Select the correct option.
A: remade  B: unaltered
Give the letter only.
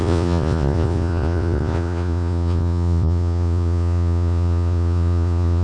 A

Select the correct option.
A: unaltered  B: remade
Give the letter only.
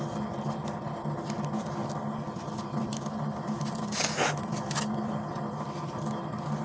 A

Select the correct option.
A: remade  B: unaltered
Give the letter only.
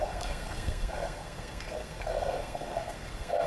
A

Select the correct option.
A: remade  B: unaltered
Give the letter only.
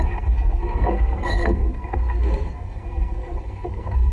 A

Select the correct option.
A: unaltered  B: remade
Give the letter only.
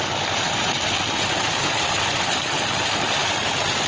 A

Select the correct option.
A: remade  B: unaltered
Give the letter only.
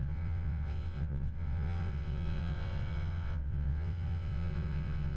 A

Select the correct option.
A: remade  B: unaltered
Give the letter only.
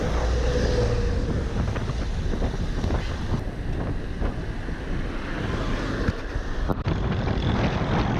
B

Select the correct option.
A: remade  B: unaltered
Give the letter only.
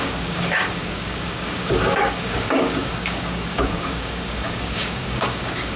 A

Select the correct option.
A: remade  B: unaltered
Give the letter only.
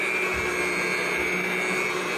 B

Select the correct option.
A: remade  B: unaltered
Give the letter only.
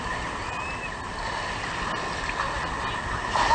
B